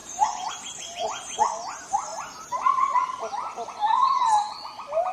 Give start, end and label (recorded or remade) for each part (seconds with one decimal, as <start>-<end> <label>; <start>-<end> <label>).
0.0-0.5 remade; 0.5-2.1 recorded; 2.1-3.2 remade; 3.2-5.1 recorded